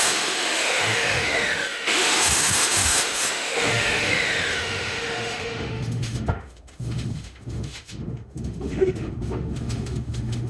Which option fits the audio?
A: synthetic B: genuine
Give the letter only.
A